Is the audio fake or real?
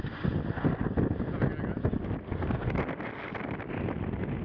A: real